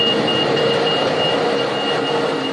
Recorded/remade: recorded